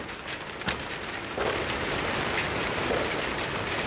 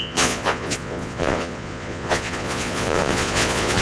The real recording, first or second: first